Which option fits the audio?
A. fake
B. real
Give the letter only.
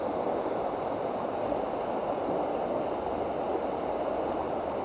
B